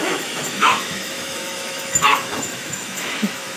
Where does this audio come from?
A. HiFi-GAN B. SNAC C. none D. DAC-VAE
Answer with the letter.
D